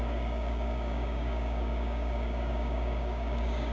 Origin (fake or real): fake